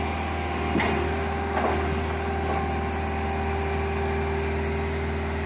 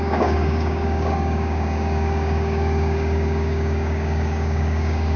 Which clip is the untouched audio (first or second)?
first